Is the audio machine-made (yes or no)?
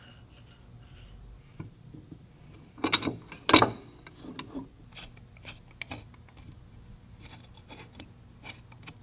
no